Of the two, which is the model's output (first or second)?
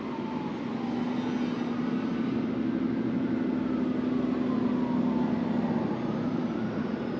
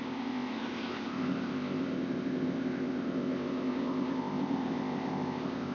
second